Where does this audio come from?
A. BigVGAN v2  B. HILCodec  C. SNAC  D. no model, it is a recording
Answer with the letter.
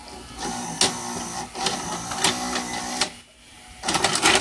D